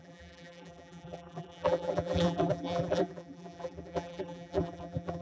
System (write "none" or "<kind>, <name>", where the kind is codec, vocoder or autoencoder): vocoder, BigVGAN v2